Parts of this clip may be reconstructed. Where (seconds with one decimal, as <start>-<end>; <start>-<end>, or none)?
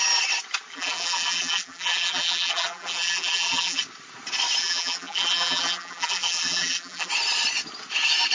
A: 0.7-3.8; 4.6-7.1